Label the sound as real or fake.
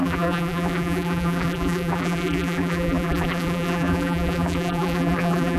fake